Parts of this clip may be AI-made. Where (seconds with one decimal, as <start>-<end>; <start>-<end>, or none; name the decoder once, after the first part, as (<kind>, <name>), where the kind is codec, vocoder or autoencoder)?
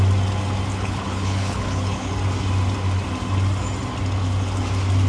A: 0.7-2.1 (codec, HILCodec)